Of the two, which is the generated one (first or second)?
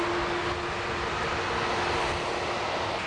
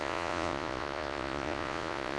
second